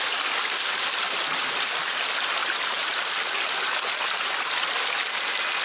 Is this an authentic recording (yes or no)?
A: no